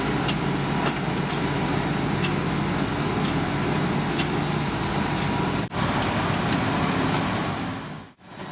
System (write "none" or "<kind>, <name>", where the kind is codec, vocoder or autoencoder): none